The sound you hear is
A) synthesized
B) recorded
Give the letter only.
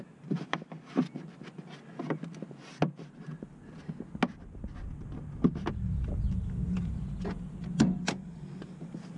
B